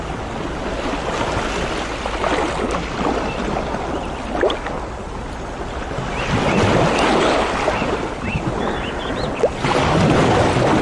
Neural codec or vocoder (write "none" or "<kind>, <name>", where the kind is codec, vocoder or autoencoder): none